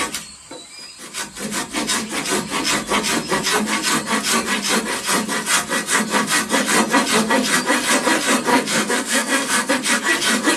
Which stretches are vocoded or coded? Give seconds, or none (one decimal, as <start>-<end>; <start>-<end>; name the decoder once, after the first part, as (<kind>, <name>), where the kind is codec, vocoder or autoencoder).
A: 8.5-9.7 (codec, SNAC)